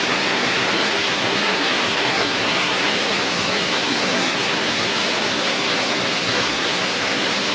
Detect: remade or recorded remade